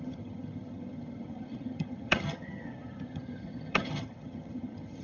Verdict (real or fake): fake